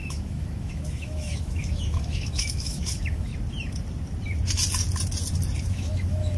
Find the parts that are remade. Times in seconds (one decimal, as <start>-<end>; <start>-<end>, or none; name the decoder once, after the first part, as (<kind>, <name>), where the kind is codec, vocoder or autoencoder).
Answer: 0.0-3.3 (autoencoder, DAC-VAE); 5.6-6.4